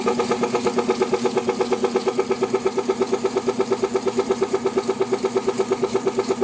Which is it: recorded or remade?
recorded